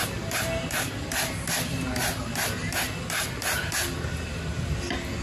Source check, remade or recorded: recorded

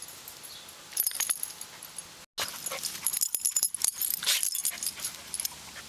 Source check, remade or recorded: recorded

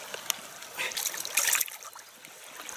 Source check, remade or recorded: recorded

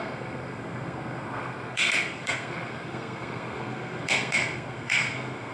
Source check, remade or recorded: remade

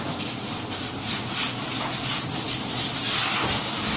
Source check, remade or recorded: recorded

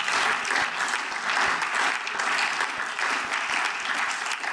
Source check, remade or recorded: recorded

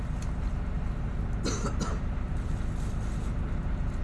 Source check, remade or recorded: recorded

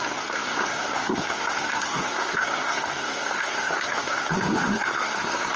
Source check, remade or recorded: remade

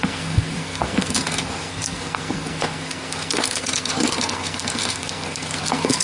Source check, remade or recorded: remade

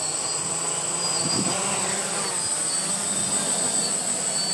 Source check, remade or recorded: recorded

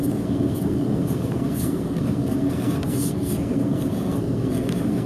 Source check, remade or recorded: remade